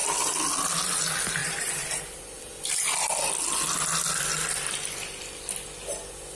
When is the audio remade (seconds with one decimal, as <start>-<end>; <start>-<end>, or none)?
1.4-2.5